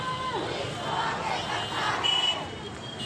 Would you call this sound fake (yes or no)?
no